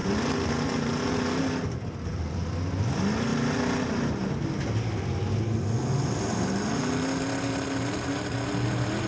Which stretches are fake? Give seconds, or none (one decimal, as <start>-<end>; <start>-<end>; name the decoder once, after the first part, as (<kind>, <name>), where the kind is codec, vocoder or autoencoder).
none